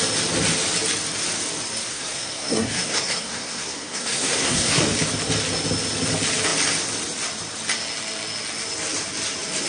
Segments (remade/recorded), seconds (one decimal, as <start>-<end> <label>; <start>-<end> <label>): 0.0-1.9 recorded; 1.9-4.8 remade; 4.8-9.7 recorded